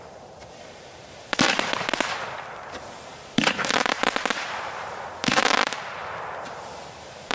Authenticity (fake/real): fake